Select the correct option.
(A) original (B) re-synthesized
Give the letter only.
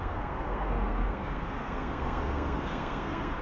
B